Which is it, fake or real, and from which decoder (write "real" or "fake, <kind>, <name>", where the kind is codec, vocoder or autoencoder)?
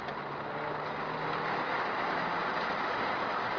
real